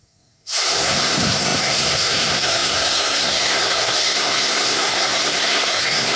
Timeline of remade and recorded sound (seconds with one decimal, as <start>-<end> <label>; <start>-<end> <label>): 0.0-6.2 remade